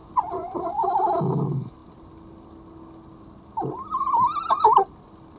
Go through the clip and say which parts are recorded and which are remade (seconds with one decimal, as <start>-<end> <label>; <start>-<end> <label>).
0.0-1.1 remade; 1.1-5.4 recorded